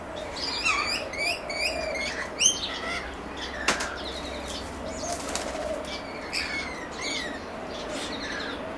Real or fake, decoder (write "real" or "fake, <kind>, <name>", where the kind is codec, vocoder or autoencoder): real